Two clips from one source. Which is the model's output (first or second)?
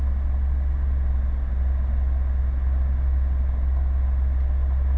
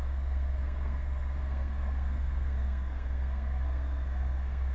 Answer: second